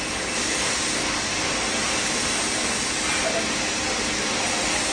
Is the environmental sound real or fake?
real